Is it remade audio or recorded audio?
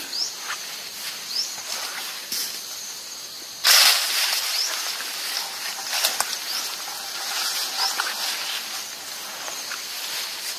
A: recorded